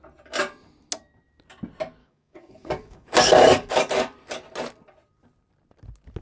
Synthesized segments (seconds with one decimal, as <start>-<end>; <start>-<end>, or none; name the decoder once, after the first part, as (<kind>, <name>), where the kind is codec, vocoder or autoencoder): 2.0-3.9 (codec, DAC)